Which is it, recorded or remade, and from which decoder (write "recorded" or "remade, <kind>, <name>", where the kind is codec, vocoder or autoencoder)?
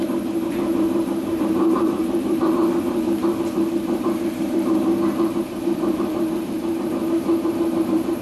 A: remade, vocoder, BigVGAN v2